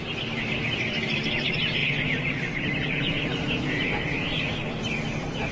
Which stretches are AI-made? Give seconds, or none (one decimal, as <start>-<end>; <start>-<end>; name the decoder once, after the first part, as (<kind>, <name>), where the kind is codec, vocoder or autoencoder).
0.0-1.8 (vocoder, BigVGAN v2); 3.0-4.6